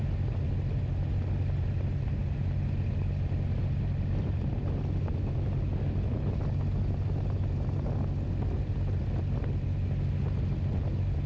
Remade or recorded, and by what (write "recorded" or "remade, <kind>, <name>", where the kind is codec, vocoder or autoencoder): recorded